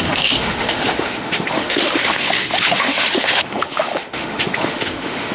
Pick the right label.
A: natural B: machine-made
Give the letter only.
B